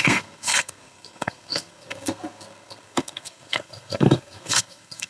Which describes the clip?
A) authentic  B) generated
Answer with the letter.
B